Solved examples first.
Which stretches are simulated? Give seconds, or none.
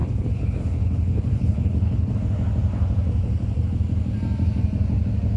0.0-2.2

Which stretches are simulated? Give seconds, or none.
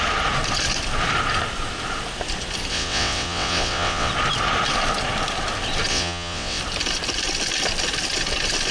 2.7-4.1; 5.9-6.6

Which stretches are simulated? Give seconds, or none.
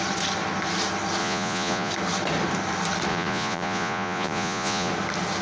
1.2-1.9; 3.1-4.9